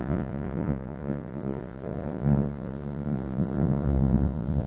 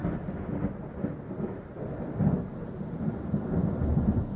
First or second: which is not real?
first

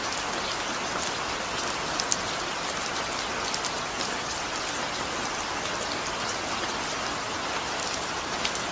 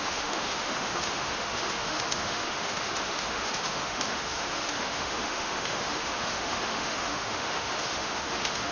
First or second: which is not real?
second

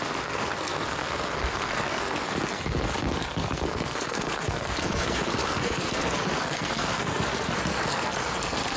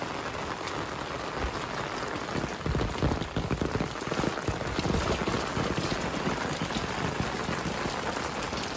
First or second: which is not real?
first